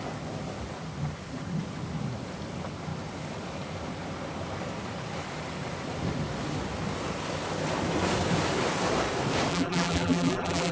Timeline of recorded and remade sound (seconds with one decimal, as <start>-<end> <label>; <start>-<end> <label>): 0.0-9.5 recorded; 9.5-10.7 remade